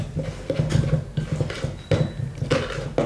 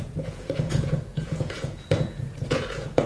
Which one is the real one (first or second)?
first